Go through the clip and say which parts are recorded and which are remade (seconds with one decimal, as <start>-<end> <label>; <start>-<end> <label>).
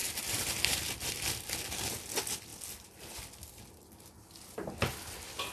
0.0-5.5 recorded